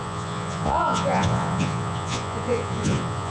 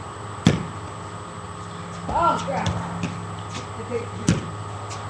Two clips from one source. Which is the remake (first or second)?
first